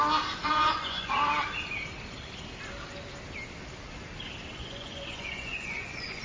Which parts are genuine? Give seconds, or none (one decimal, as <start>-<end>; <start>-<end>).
0.0-0.4; 1.1-4.6

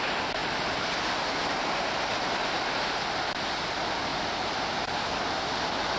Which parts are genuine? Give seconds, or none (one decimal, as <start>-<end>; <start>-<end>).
0.0-0.4; 3.0-4.1; 5.1-6.0